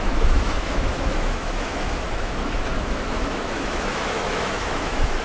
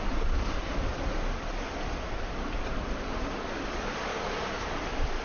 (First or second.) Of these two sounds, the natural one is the second